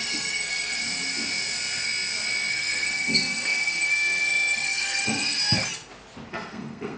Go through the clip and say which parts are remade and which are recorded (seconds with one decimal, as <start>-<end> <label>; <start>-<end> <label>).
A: 0.0-0.8 remade; 0.8-2.5 recorded; 2.5-5.4 remade; 5.4-6.3 recorded; 6.3-7.0 remade